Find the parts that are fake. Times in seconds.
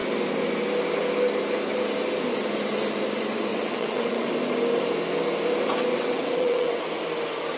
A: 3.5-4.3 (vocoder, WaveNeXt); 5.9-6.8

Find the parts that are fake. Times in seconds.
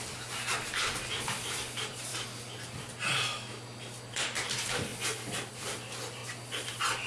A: 0.0-2.1 (vocoder, BigVGAN v2); 4.5-4.9; 5.5-6.2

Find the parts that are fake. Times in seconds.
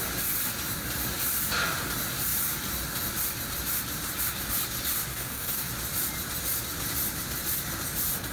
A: 5.1-5.7 (codec, DAC)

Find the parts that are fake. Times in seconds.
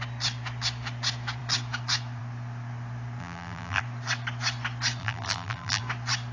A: 3.2-3.8 (vocoder, BigVGAN v2); 5.0-5.8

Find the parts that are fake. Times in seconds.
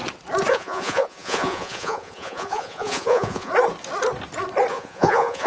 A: 0.5-3.5 (vocoder, Vocos); 4.7-5.5